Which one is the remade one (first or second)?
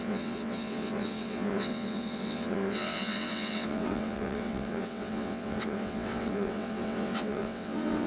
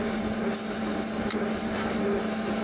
first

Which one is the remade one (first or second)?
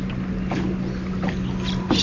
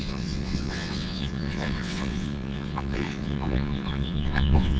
second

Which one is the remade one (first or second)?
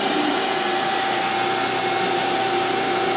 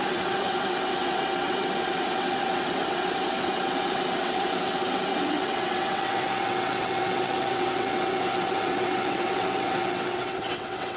second